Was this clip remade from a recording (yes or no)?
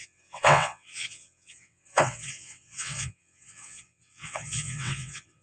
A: yes